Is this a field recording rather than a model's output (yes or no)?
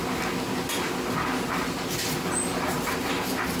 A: yes